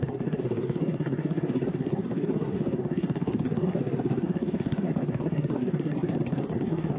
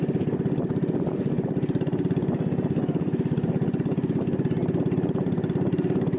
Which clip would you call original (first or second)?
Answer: second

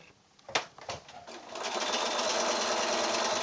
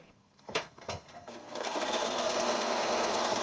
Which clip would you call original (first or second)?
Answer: first